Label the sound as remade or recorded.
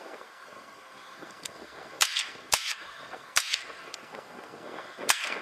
remade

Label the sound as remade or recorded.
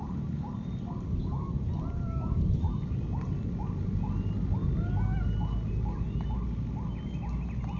recorded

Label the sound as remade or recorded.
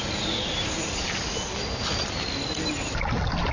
recorded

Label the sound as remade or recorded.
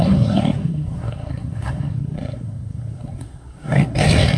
remade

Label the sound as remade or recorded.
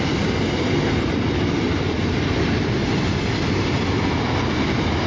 recorded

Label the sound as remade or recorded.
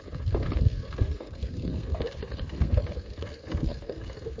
remade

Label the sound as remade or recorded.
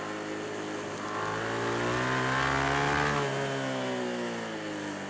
recorded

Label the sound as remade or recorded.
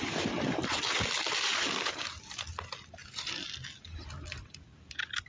recorded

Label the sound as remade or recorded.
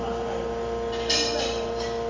recorded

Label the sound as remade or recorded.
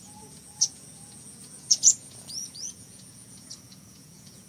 remade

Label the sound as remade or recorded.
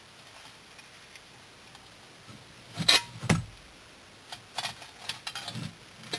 recorded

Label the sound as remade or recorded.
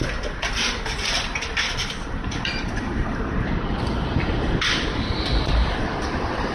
remade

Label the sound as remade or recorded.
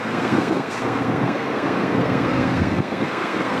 remade